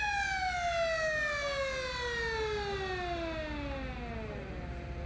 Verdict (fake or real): real